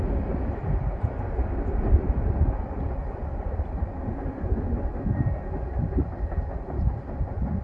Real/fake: real